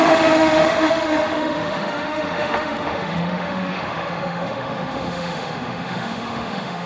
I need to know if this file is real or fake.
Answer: fake